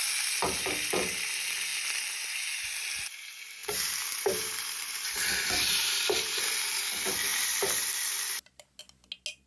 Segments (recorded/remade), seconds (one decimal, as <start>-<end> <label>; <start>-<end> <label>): 0.0-3.6 recorded; 3.6-6.6 remade; 6.6-7.3 recorded; 7.3-8.8 remade; 8.8-9.5 recorded